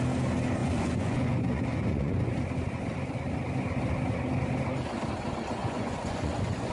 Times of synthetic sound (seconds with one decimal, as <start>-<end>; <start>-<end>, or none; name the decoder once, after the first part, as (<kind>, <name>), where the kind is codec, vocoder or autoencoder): 0.6-2.3 (vocoder, Vocos); 5.6-6.7